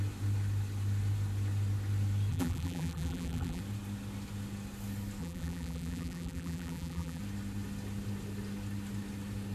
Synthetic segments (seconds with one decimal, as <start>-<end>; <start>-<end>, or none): 2.3-3.6; 5.2-7.2